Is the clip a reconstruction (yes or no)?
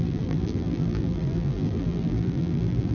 yes